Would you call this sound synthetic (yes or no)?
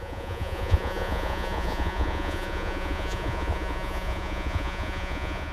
yes